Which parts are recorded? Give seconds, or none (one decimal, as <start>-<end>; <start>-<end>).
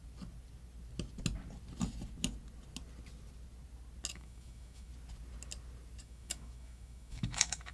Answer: 0.0-4.1; 4.9-6.0